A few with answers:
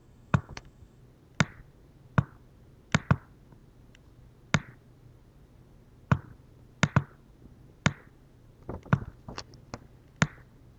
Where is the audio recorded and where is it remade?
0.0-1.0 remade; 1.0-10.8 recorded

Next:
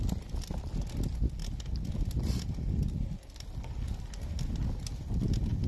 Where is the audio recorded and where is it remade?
0.0-5.7 recorded

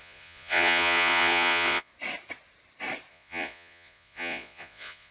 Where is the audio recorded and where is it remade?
0.0-1.9 remade; 1.9-3.1 recorded; 3.1-5.1 remade

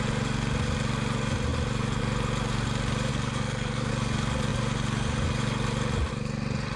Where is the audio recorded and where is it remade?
0.0-3.1 recorded; 3.1-3.9 remade; 3.9-6.8 recorded

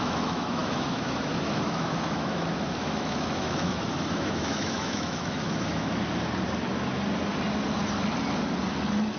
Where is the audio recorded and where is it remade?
0.0-6.0 remade; 6.0-9.2 recorded

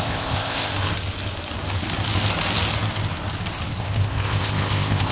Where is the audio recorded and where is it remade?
0.0-0.7 remade; 0.7-3.8 recorded; 3.8-5.1 remade